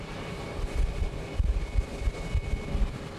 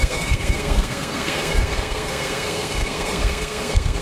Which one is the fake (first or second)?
second